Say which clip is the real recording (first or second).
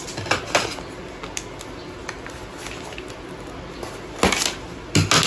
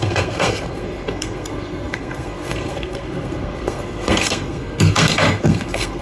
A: first